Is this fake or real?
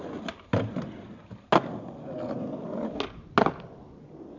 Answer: real